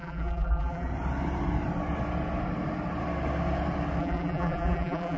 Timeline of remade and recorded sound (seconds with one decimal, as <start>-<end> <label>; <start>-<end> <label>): 0.0-0.9 remade; 0.9-4.0 recorded; 4.0-5.2 remade